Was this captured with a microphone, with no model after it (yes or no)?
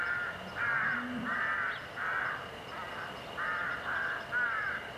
yes